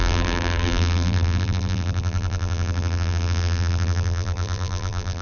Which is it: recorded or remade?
remade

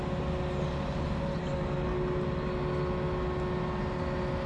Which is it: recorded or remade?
recorded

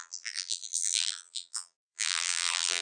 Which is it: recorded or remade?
remade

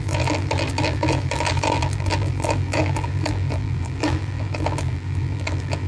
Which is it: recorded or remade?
remade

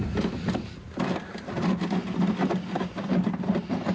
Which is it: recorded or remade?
recorded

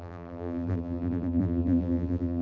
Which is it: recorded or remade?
remade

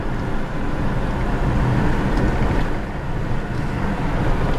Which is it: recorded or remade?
recorded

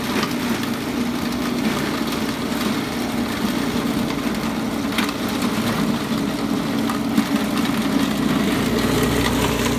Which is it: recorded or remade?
recorded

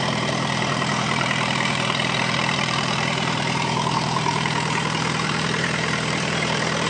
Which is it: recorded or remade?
remade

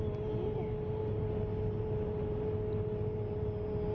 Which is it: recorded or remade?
recorded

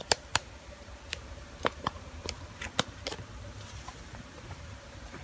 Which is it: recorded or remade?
remade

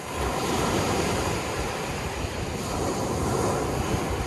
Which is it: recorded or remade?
remade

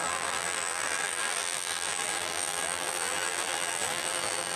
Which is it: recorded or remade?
remade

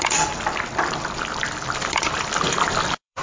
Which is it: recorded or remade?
remade